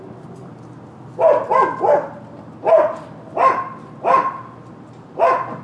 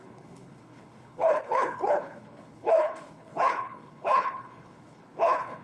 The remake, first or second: second